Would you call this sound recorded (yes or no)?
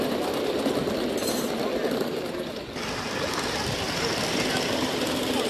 yes